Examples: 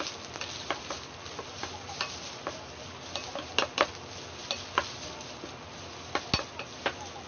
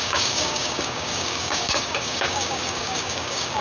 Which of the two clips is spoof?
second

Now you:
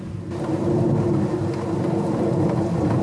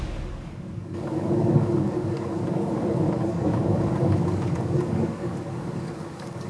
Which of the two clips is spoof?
second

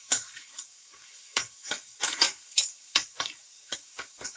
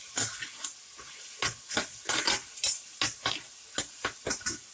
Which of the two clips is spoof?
first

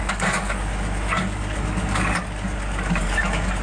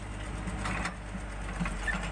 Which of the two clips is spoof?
first